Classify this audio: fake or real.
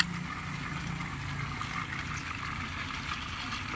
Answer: real